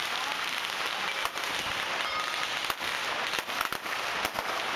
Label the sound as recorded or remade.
recorded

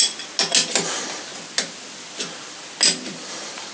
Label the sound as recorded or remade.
recorded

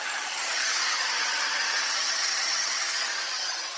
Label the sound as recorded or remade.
remade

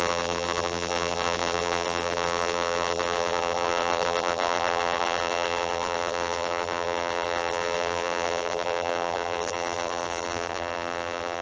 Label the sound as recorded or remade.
remade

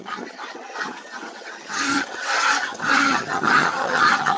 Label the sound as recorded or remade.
remade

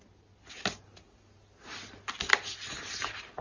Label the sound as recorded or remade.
recorded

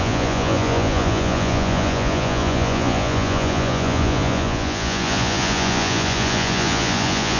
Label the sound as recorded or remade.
remade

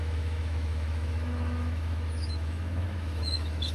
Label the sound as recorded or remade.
remade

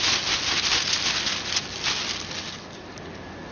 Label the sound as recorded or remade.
recorded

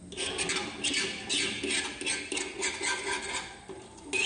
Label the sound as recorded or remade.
recorded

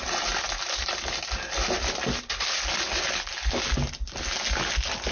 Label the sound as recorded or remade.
recorded